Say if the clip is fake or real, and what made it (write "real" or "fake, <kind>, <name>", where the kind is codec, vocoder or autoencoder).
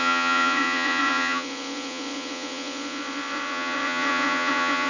fake, vocoder, Vocos